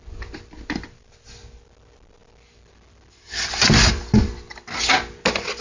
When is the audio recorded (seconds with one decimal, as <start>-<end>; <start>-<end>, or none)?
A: 0.0-5.6